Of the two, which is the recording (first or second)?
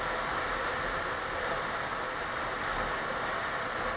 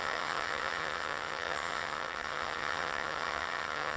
first